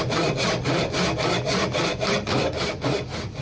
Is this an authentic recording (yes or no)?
yes